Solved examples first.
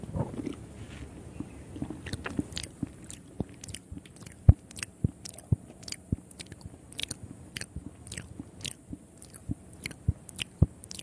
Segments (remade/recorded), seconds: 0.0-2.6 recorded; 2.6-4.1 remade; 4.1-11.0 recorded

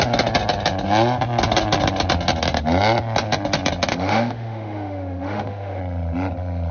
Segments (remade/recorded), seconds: 0.0-3.9 recorded; 3.9-5.8 remade; 5.8-6.7 recorded

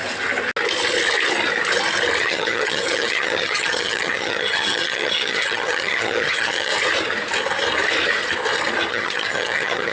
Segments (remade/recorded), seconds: 0.0-2.2 recorded; 2.2-6.7 remade; 6.7-8.9 recorded; 8.9-9.9 remade